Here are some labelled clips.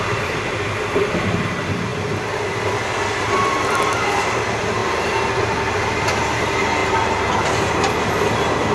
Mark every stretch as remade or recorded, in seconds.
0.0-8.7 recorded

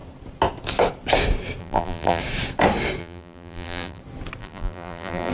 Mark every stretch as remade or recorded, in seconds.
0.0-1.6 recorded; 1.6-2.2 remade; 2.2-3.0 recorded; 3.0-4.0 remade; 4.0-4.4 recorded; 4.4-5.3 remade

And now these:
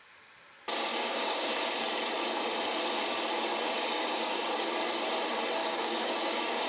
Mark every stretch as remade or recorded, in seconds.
0.0-0.9 recorded; 0.9-1.8 remade; 1.8-3.5 recorded; 3.5-4.7 remade; 4.7-5.6 recorded; 5.6-6.7 remade

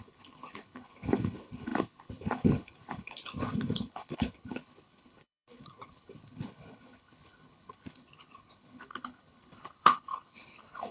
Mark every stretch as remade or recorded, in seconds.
0.0-10.9 remade

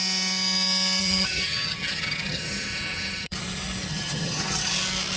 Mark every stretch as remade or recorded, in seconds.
0.0-1.0 recorded; 1.0-3.4 remade; 3.4-3.9 recorded; 3.9-4.7 remade; 4.7-5.2 recorded